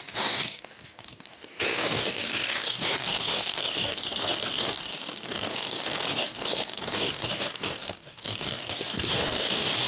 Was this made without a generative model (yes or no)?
no